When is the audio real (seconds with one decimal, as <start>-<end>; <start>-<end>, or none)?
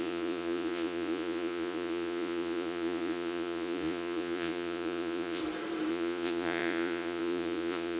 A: 5.4-5.9